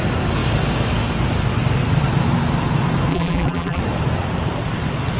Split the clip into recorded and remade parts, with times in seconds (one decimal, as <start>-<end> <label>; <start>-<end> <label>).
0.0-3.1 recorded; 3.1-3.8 remade; 3.8-5.2 recorded

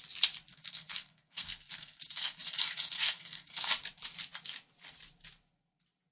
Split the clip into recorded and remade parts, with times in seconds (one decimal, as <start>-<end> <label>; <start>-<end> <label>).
0.0-0.5 recorded; 0.5-3.7 remade; 3.7-6.1 recorded